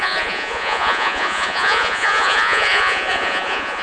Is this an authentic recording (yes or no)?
no